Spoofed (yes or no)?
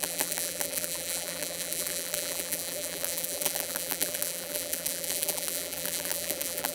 yes